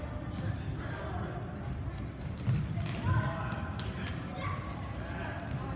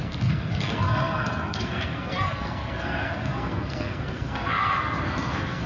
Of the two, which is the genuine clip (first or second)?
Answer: first